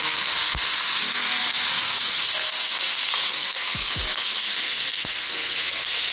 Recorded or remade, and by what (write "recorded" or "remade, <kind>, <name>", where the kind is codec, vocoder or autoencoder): remade, codec, SNAC